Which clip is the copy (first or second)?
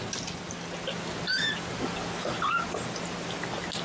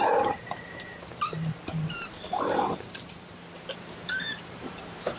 second